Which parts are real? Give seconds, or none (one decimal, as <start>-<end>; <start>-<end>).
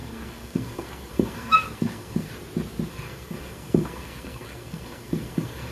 2.3-2.9